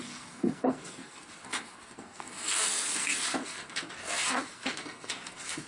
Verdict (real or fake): fake